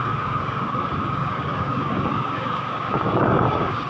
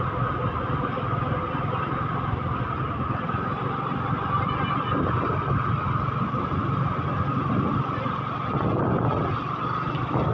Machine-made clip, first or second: first